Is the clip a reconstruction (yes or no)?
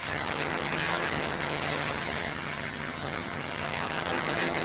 yes